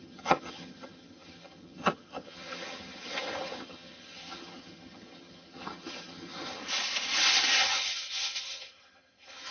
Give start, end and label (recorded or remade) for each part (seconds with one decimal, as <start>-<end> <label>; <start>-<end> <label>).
0.0-6.6 remade; 6.6-7.5 recorded; 7.5-9.5 remade

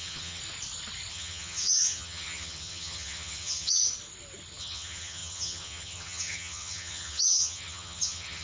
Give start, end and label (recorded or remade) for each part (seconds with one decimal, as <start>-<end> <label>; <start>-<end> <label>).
0.0-0.4 remade; 0.4-1.1 recorded; 1.1-3.8 remade; 3.8-4.6 recorded; 4.6-8.4 remade

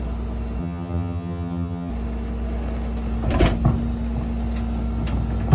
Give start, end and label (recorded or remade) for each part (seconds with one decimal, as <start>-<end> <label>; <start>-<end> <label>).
0.0-0.6 recorded; 0.6-1.9 remade; 1.9-5.5 recorded

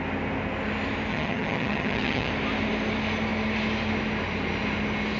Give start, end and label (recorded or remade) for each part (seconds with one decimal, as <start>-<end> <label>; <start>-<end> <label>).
0.0-1.1 recorded; 1.1-2.3 remade; 2.3-5.2 recorded

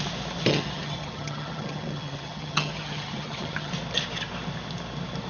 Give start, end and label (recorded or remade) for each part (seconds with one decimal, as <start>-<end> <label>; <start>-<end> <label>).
0.0-0.5 recorded; 0.5-3.7 remade; 3.7-5.3 recorded

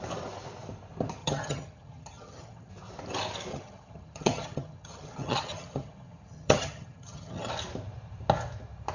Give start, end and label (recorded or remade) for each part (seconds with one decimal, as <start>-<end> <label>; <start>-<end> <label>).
0.0-1.2 recorded; 1.2-2.7 remade; 2.7-3.5 recorded; 3.5-7.5 remade; 7.5-8.9 recorded